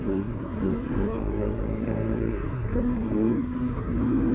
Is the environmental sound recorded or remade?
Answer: remade